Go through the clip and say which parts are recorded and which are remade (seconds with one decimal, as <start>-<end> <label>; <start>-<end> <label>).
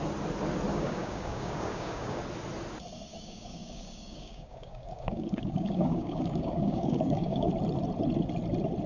0.0-0.7 recorded; 0.7-2.2 remade; 2.2-3.1 recorded; 3.1-7.5 remade; 7.5-8.9 recorded